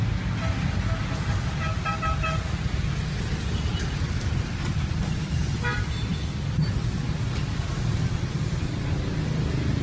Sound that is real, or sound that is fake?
real